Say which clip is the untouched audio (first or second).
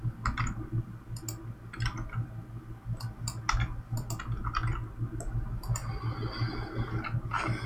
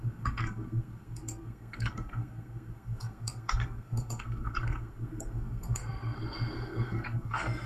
first